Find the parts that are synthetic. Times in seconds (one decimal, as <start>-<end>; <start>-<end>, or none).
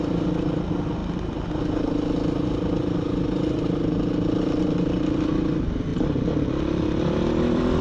none